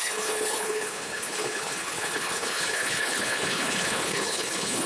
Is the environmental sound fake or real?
fake